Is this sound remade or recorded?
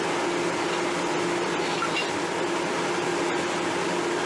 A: recorded